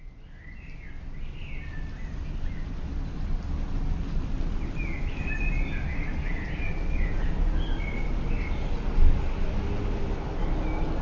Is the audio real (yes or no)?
yes